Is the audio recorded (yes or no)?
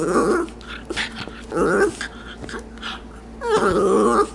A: yes